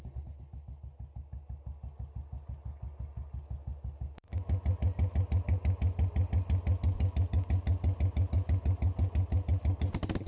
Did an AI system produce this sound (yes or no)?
no